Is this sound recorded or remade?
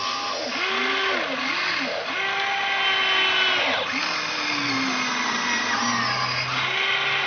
recorded